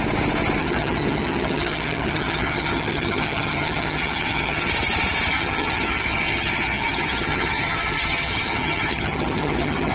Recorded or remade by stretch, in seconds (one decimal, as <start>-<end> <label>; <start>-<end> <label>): 0.0-0.6 recorded; 0.6-4.7 remade; 4.7-5.3 recorded; 5.3-9.9 remade